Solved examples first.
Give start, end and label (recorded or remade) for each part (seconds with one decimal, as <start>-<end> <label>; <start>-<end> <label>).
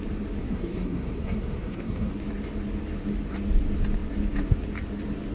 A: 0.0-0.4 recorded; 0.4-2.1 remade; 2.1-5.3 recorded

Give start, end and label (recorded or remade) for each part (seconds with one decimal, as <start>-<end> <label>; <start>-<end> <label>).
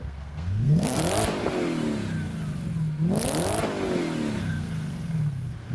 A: 0.0-1.0 remade; 1.0-4.4 recorded; 4.4-5.7 remade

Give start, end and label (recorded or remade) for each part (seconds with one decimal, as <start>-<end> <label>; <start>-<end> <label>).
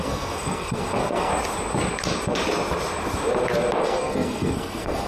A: 0.0-1.3 remade; 1.3-3.8 recorded; 3.8-5.1 remade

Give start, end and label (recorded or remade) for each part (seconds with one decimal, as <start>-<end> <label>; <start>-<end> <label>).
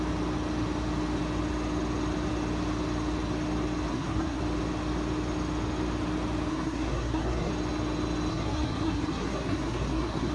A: 0.0-3.9 recorded; 3.9-4.4 remade; 4.4-6.5 recorded; 6.5-7.5 remade; 7.5-8.3 recorded; 8.3-10.3 remade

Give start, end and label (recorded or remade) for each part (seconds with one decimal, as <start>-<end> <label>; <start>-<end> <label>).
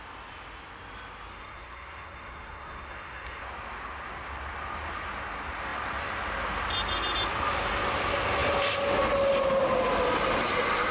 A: 0.0-1.3 recorded; 1.3-3.4 remade; 3.4-10.9 recorded